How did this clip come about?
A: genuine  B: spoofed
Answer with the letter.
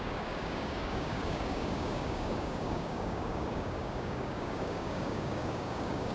B